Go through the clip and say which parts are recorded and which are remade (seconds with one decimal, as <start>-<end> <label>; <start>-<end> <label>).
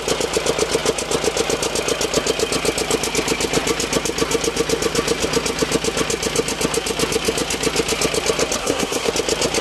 0.0-8.6 recorded; 8.6-9.1 remade; 9.1-9.6 recorded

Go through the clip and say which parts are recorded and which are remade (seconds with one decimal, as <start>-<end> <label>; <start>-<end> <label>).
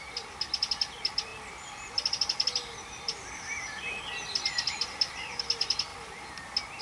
0.0-6.8 recorded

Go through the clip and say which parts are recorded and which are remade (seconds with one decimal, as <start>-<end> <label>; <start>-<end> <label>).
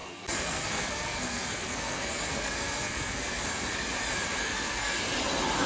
0.0-3.4 remade; 3.4-4.4 recorded; 4.4-5.0 remade; 5.0-5.7 recorded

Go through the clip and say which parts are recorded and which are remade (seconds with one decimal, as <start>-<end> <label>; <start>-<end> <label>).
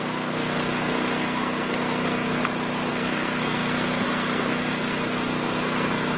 0.0-2.4 remade; 2.4-2.9 recorded; 2.9-6.2 remade